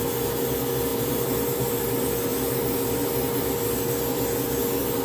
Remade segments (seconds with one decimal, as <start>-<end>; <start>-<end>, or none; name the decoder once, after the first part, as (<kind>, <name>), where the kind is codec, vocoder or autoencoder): 0.9-1.6 (vocoder, BigVGAN v2)